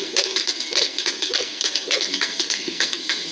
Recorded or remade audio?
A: remade